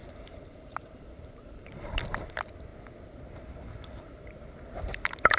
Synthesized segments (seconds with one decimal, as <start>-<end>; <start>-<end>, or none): 0.0-2.0